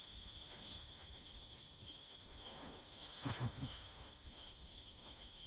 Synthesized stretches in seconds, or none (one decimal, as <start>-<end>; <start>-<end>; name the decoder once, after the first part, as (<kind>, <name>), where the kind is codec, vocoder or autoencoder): 0.0-5.5 (autoencoder, DAC-VAE)